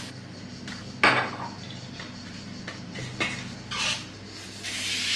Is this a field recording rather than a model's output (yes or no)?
yes